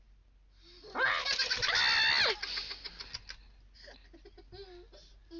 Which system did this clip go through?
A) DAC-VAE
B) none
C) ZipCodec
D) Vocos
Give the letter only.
B